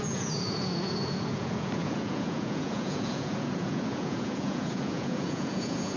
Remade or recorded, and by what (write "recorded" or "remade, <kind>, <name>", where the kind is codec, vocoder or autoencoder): remade, vocoder, Vocos